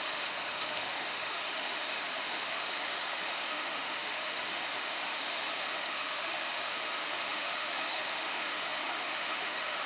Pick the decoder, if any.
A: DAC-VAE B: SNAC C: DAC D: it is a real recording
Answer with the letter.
A